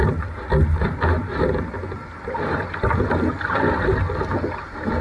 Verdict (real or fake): real